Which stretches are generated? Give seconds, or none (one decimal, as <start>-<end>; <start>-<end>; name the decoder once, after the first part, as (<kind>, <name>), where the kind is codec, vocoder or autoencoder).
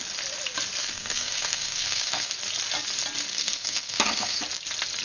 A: 0.8-2.3 (codec, SNAC); 3.3-4.4